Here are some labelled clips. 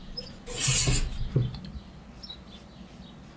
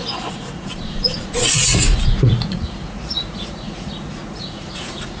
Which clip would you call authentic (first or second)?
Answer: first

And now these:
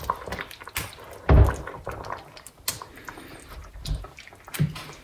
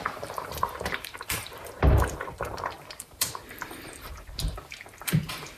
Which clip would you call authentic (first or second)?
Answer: first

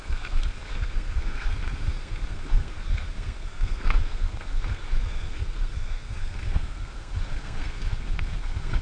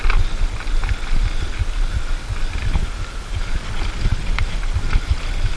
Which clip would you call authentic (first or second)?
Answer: second